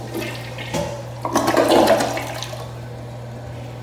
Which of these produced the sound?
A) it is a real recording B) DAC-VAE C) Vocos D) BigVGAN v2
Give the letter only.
A